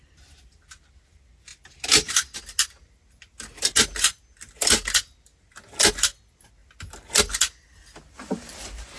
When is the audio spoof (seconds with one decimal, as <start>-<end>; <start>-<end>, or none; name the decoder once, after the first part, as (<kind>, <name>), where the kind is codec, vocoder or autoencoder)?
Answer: none